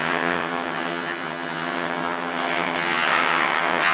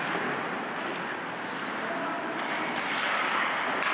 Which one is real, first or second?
second